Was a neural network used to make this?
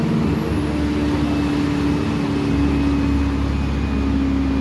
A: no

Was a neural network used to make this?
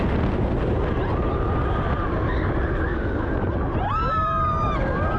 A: no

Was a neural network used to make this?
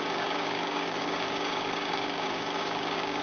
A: yes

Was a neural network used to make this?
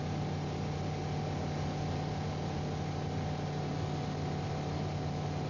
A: no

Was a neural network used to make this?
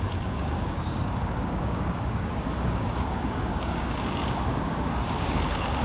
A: yes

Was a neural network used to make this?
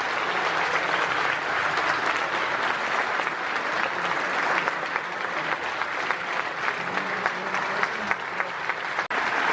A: no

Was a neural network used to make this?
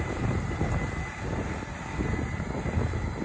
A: no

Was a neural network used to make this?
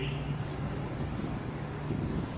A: yes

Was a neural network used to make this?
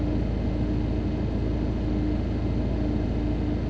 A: no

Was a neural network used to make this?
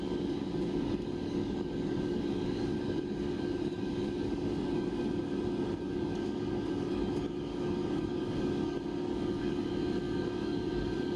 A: yes